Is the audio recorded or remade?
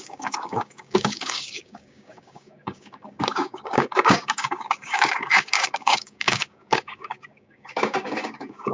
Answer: remade